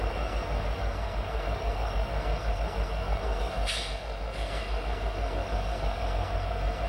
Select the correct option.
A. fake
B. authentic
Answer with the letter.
A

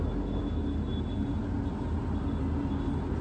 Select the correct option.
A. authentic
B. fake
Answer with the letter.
A